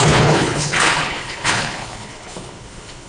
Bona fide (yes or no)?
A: no